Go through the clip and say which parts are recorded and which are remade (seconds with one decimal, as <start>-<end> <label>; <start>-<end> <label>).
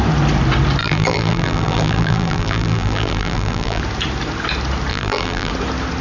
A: 0.0-0.8 recorded; 0.8-3.8 remade; 3.8-4.9 recorded; 4.9-5.5 remade; 5.5-6.0 recorded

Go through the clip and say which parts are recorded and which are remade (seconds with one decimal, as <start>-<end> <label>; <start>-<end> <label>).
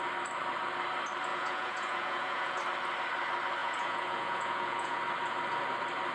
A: 0.0-1.3 recorded; 1.3-2.6 remade; 2.6-3.6 recorded; 3.6-5.0 remade; 5.0-6.1 recorded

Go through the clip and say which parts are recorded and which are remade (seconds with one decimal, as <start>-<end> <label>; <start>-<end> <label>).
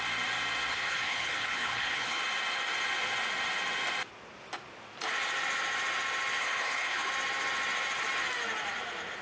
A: 0.0-0.7 recorded; 0.7-2.2 remade; 2.2-6.4 recorded; 6.4-7.1 remade; 7.1-9.2 recorded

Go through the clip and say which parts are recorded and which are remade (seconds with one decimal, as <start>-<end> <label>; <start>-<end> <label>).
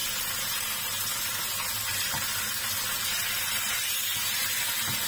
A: 0.0-5.1 recorded